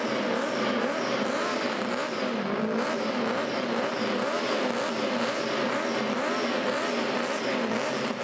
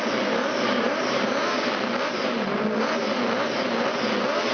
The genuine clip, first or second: first